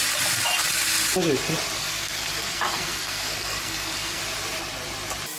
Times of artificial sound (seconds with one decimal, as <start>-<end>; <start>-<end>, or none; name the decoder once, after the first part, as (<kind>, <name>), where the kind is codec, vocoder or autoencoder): 1.8-4.2 (codec, SNAC)